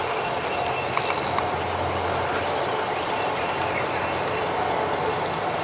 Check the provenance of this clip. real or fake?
real